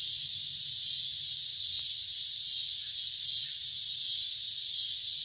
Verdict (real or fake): fake